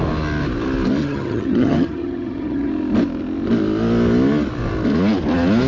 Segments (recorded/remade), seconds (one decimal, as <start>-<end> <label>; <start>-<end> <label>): 0.0-1.0 recorded; 1.0-2.7 remade; 2.7-5.7 recorded